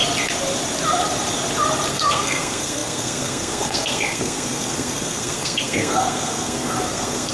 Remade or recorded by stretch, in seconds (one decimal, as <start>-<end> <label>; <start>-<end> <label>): 0.0-1.9 recorded; 1.9-7.3 remade